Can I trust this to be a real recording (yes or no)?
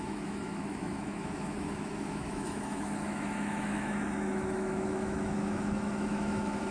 no